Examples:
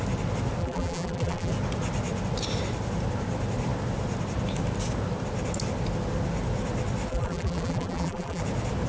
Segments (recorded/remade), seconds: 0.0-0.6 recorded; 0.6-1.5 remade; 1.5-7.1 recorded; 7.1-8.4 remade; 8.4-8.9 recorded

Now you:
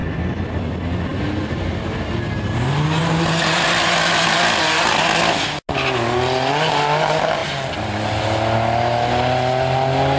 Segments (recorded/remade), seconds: 0.0-1.1 recorded; 1.1-1.8 remade; 1.8-10.2 recorded

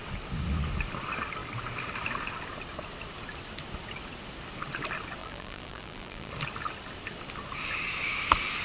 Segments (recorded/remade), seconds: 0.0-5.2 recorded; 5.2-6.3 remade; 6.3-8.6 recorded

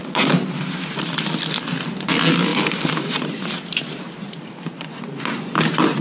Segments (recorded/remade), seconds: 0.0-0.6 remade; 0.6-2.5 recorded; 2.5-5.2 remade; 5.2-6.0 recorded

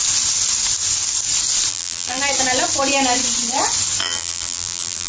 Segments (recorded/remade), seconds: 0.0-1.7 recorded; 1.7-2.2 remade; 2.2-4.0 recorded; 4.0-5.1 remade

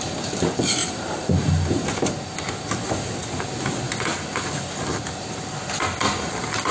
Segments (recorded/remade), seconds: 0.0-0.8 recorded; 0.8-3.5 remade; 3.5-6.7 recorded

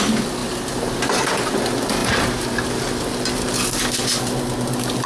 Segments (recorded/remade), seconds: 0.0-0.4 recorded; 0.4-1.5 remade; 1.5-2.0 recorded; 2.0-2.8 remade; 2.8-5.1 recorded